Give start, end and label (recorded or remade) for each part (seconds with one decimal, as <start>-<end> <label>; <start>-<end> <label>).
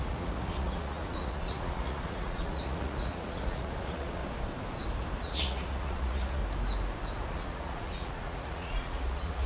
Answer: 0.0-4.2 remade; 4.2-5.2 recorded; 5.2-6.4 remade; 6.4-7.3 recorded; 7.3-9.5 remade